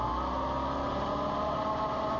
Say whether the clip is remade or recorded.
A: recorded